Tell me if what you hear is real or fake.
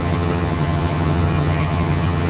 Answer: fake